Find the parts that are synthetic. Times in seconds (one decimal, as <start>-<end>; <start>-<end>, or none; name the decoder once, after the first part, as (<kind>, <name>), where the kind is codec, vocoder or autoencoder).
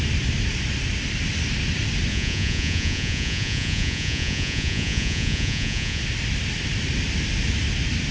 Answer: 2.1-6.0 (vocoder, Vocos)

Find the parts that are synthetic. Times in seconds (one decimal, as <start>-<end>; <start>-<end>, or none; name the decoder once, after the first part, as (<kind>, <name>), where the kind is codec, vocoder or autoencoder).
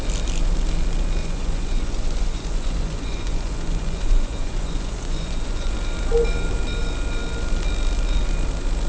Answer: 1.2-5.7 (vocoder, Vocos)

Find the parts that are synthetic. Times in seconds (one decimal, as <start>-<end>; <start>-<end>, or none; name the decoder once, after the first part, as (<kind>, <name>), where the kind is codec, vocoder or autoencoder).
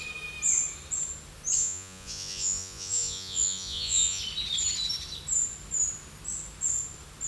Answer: 1.6-4.2 (vocoder, Vocos)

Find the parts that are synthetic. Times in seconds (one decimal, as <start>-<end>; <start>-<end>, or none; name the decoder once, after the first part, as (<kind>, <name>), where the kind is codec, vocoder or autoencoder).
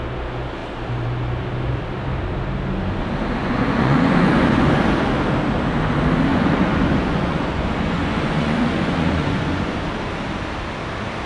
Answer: 3.4-4.8 (vocoder, Vocos); 6.3-9.8